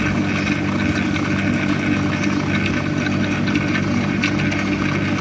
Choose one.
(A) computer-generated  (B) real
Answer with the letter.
B